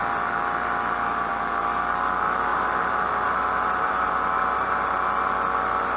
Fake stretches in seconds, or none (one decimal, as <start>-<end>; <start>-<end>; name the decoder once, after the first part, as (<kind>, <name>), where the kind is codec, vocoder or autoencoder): 2.5-4.9 (vocoder, BigVGAN v2)